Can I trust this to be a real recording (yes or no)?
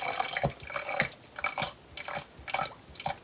yes